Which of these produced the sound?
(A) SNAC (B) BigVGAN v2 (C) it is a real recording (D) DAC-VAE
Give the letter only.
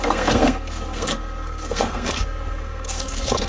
A